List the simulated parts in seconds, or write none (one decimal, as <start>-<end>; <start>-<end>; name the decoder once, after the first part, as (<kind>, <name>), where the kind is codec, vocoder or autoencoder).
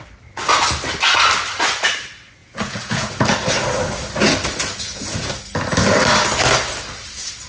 2.4-3.1 (vocoder, Vocos); 4.7-5.3